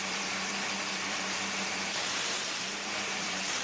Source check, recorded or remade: remade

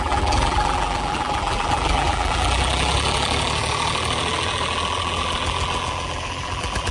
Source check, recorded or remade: remade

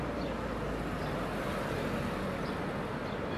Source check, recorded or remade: recorded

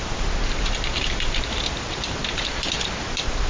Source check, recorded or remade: remade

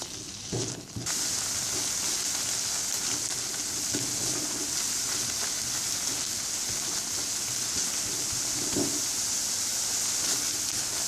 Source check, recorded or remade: recorded